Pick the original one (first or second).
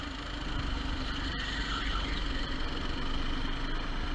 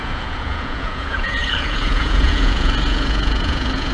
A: first